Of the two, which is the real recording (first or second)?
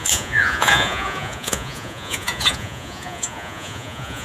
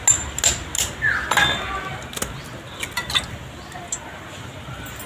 second